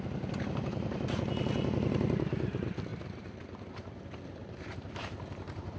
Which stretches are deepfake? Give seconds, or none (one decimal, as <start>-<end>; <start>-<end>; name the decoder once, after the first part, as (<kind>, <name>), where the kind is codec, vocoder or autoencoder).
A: 2.9-3.4 (vocoder, BigVGAN v2); 4.4-5.8